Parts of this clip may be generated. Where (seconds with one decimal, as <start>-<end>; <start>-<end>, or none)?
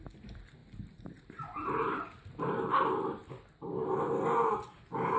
none